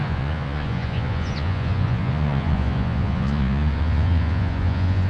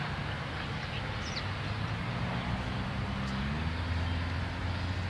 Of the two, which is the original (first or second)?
second